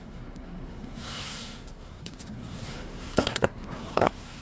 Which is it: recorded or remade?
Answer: remade